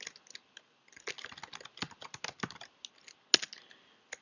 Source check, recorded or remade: recorded